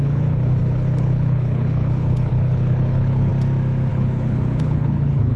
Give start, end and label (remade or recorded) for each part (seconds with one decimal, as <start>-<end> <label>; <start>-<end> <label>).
0.0-3.3 remade; 3.3-3.9 recorded; 3.9-5.4 remade